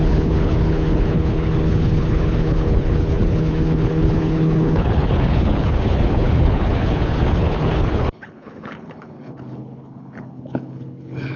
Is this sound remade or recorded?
remade